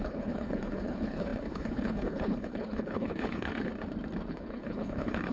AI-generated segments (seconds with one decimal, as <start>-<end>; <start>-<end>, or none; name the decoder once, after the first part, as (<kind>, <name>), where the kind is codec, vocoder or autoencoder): 0.0-3.7 (codec, HILCodec); 4.3-5.3